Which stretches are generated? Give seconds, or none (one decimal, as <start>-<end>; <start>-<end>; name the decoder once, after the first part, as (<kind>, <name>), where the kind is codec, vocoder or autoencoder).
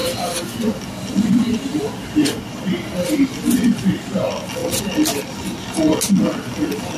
none